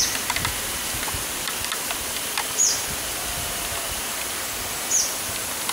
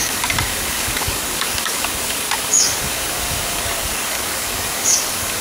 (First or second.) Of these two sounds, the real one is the first